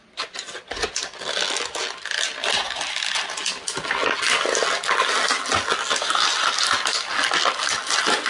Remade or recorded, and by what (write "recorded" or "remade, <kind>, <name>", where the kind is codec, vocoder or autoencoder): recorded